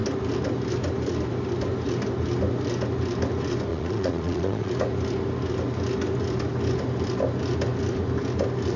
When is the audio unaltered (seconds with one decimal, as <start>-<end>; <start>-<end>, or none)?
0.0-3.7; 4.7-8.8